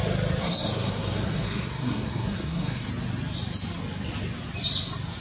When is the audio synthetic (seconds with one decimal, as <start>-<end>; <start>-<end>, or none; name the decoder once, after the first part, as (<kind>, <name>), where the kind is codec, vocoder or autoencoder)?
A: 0.4-2.9 (codec, SNAC)